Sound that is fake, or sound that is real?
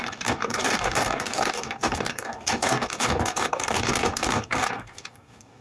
fake